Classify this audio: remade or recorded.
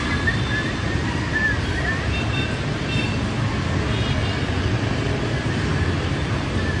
recorded